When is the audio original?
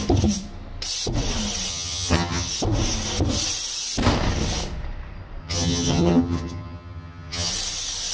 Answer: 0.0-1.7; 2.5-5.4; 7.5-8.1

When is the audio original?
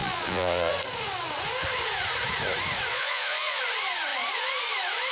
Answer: 0.7-2.9; 3.6-5.1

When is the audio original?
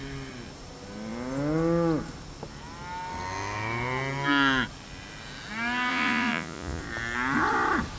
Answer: 0.0-5.9; 6.8-8.0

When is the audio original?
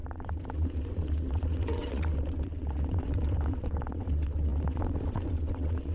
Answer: none